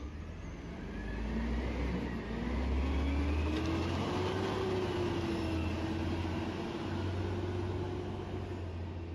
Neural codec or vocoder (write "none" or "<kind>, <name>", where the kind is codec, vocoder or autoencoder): none